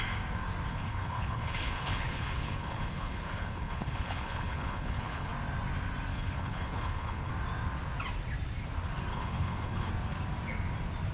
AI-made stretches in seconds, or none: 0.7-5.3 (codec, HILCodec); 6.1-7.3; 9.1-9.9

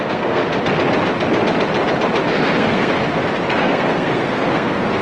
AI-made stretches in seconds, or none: 0.0-0.4 (codec, SNAC); 2.3-2.9; 3.6-5.0

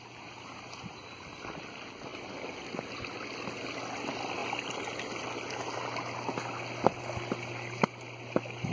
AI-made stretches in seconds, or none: none

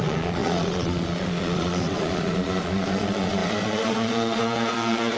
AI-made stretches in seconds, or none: 0.0-5.2 (vocoder, Vocos)

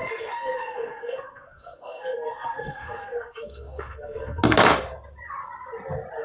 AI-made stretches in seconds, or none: 0.0-4.4 (codec, SNAC)